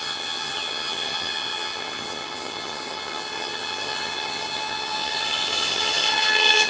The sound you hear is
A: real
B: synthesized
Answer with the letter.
B